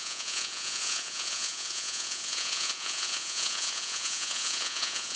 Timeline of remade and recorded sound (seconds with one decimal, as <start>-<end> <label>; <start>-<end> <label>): 0.0-5.2 remade